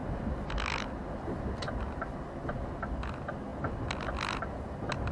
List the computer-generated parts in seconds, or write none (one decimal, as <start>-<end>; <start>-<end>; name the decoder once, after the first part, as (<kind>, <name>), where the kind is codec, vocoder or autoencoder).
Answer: none